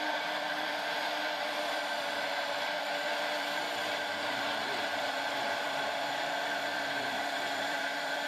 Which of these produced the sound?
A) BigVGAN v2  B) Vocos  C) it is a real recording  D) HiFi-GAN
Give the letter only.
A